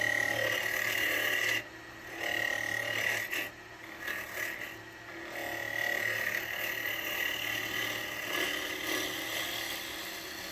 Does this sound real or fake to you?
real